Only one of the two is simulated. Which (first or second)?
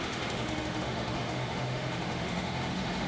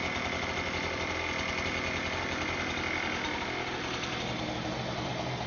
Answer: first